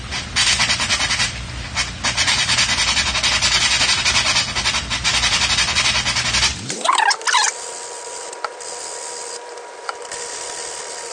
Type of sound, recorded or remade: recorded